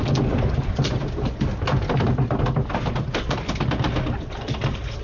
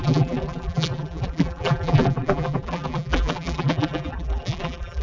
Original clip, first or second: first